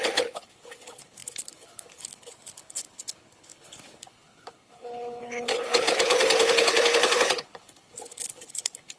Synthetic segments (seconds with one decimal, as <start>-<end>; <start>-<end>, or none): 0.0-9.0